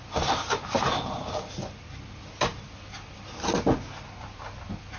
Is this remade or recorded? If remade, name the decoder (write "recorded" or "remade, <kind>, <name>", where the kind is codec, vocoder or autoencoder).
recorded